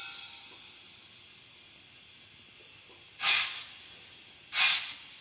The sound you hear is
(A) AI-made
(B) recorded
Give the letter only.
B